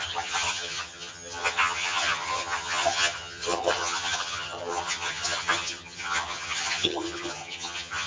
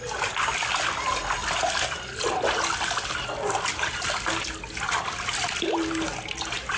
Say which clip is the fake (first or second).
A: first